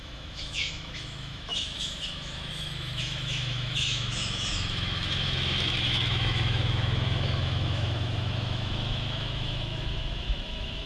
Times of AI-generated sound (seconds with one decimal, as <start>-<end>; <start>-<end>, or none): 0.0-10.9